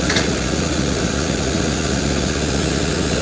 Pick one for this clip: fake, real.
fake